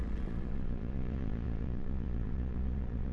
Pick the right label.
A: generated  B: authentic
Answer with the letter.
A